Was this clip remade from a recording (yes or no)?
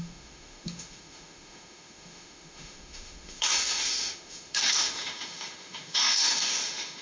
yes